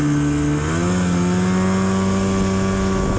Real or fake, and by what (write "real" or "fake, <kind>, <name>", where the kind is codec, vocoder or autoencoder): real